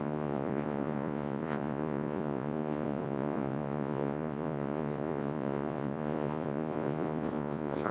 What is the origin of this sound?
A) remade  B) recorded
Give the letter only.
A